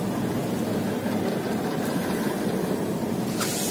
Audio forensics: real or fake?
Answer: real